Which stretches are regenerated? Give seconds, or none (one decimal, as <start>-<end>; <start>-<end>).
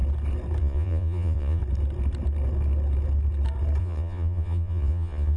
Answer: 0.6-1.6; 3.8-5.4